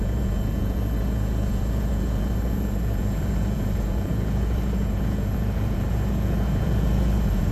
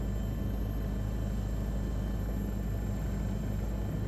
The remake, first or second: first